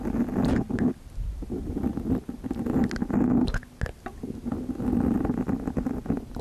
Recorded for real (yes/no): yes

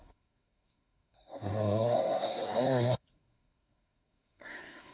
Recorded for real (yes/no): no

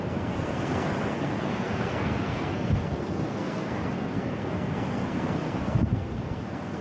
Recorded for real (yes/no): no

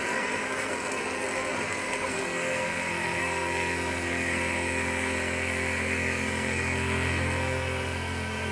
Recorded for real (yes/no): no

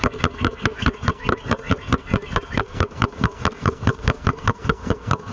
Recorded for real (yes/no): no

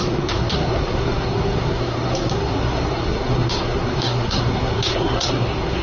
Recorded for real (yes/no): no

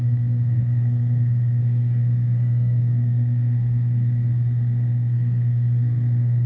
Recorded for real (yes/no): no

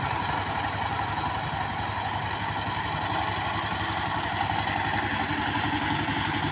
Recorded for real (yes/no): yes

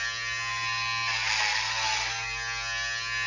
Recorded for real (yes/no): yes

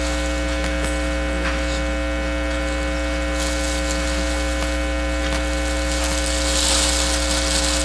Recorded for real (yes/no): yes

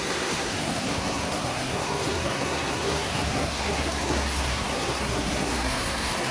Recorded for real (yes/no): no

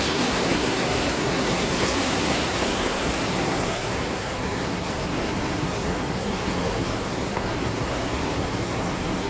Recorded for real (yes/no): no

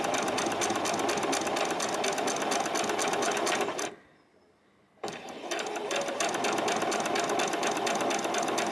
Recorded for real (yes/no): yes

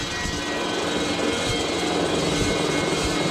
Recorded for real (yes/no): yes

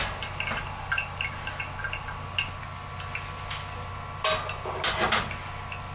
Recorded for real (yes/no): yes